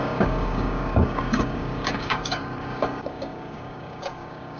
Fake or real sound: fake